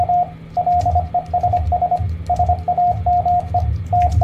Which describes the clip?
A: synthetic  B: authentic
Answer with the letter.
B